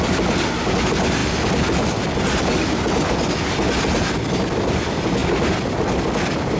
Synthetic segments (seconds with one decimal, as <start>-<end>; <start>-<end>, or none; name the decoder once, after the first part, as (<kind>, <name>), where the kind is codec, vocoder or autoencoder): none